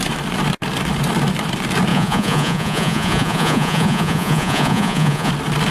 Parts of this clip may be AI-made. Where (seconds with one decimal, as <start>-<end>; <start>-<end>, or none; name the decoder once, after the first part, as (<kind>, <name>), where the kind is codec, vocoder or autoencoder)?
1.9-5.3 (vocoder, Vocos)